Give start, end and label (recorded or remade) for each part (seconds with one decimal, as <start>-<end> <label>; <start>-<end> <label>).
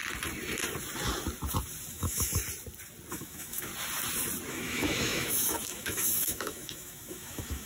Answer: 0.0-1.9 recorded; 1.9-2.4 remade; 2.4-3.1 recorded; 3.1-3.7 remade; 3.7-4.5 recorded; 4.5-7.7 remade